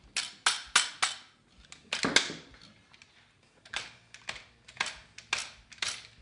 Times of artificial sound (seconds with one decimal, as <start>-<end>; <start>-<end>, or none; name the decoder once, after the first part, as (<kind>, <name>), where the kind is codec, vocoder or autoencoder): none